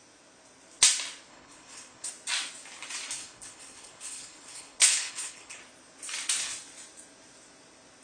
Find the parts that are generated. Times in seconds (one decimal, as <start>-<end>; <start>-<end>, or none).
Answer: 1.3-2.1; 3.2-5.6